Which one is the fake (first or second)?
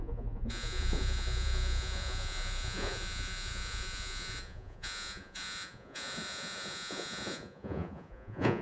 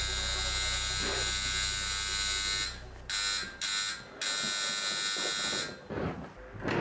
first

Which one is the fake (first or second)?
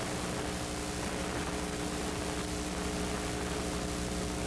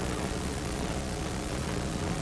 second